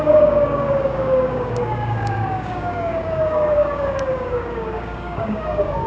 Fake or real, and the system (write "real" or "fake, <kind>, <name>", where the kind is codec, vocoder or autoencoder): fake, codec, DAC